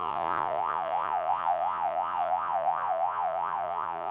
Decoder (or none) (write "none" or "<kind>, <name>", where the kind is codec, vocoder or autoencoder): vocoder, Vocos